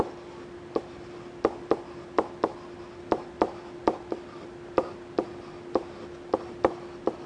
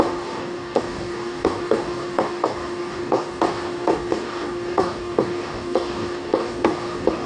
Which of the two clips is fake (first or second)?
second